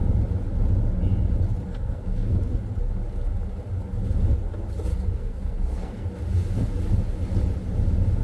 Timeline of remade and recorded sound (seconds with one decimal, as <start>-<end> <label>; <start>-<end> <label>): 0.0-1.7 recorded; 1.7-2.4 remade; 2.4-4.9 recorded; 4.9-6.1 remade; 6.1-8.2 recorded